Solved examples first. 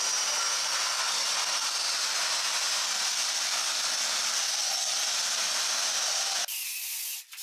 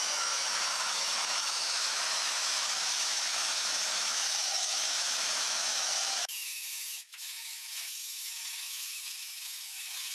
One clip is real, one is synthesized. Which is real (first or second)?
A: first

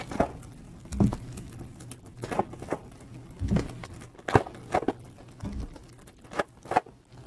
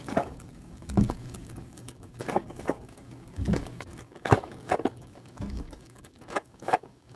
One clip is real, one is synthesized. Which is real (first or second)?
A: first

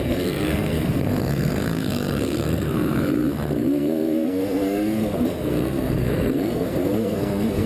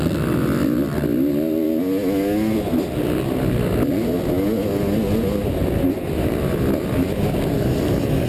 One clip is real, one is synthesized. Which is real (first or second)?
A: second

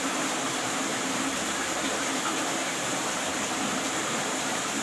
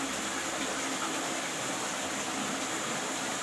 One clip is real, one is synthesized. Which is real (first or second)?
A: second